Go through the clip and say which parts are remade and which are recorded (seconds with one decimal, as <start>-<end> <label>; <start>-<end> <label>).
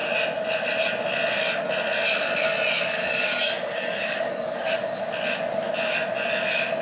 0.0-3.0 recorded; 3.0-5.0 remade; 5.0-6.8 recorded